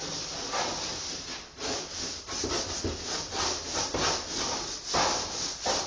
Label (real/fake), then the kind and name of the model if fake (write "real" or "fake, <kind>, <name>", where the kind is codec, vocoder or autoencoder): real